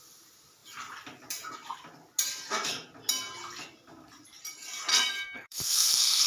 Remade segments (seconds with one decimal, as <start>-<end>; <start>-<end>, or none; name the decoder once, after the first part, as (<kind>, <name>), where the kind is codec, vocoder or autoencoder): 4.9-6.3 (codec, SNAC)